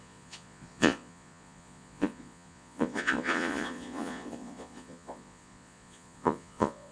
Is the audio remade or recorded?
remade